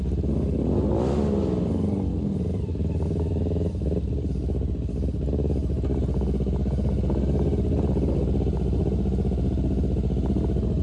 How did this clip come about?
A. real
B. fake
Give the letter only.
A